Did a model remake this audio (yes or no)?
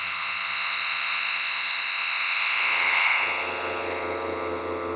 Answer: no